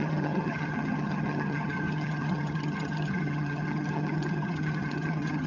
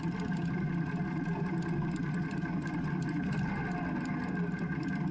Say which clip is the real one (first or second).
second